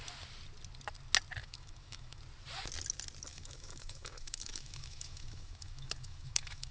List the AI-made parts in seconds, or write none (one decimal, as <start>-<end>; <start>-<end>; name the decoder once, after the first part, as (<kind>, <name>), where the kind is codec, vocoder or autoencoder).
1.4-2.2 (autoencoder, DAC-VAE); 3.3-6.7